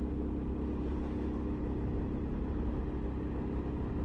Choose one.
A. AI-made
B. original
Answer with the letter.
B